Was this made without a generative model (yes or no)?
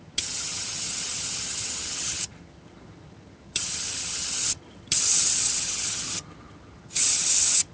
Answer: no